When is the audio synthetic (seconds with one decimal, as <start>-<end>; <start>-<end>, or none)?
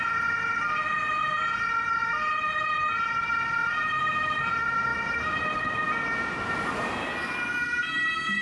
none